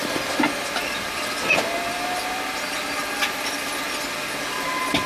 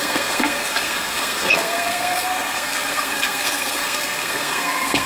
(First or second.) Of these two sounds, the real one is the first